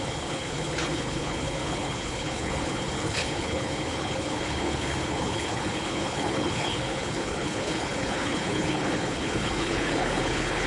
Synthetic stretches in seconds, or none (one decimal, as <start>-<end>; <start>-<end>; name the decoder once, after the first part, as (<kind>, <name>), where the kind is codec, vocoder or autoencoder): 0.0-10.7 (codec, HILCodec)